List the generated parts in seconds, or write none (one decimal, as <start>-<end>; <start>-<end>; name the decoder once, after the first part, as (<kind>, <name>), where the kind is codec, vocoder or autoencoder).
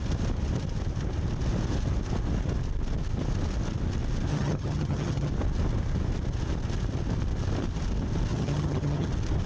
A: 4.3-5.3 (vocoder, HiFi-GAN); 8.3-9.1